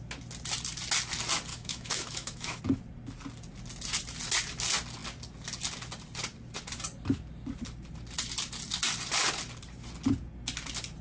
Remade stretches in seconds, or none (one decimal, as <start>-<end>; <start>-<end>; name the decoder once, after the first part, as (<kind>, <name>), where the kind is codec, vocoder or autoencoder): 1.5-2.6 (autoencoder, DAC-VAE)